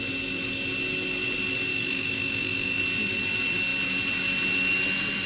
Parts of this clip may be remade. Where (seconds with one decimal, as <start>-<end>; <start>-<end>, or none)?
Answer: 1.7-2.8